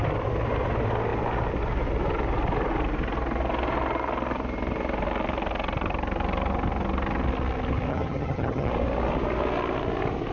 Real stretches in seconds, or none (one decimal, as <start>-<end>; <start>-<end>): 0.0-7.9; 8.7-10.3